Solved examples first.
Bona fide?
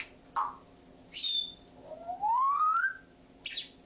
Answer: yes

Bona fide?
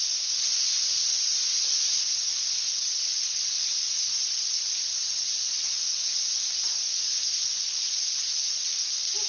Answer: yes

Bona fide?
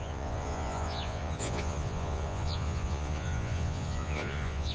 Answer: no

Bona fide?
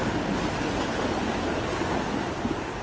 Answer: yes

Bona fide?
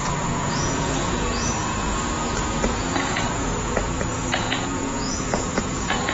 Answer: no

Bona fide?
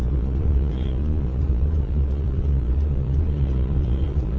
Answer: no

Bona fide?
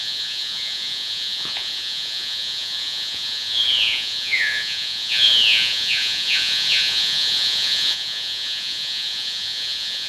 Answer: no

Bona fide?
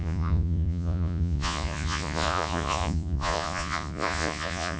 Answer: no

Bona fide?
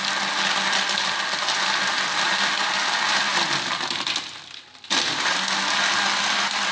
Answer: yes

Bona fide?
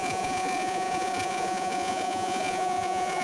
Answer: no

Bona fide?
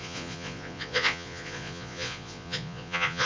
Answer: no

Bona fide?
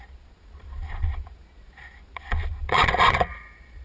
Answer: no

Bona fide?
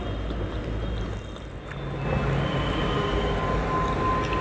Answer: yes